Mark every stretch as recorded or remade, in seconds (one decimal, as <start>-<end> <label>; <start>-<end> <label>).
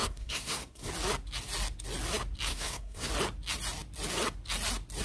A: 0.0-0.9 remade; 0.9-2.5 recorded; 2.5-3.1 remade; 3.1-5.0 recorded